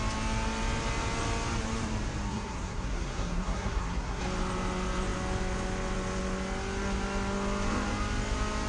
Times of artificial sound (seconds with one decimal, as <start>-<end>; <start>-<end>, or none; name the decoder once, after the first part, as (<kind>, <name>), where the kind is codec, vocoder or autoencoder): 2.3-4.2 (codec, SNAC)